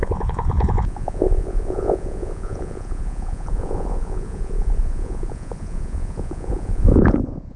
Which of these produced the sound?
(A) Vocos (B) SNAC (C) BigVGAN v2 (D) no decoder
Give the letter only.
A